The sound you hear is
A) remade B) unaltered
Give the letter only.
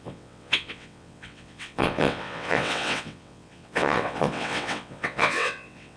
A